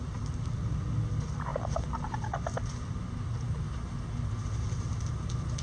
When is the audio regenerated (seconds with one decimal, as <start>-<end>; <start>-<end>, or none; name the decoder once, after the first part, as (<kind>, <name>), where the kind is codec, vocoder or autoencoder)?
none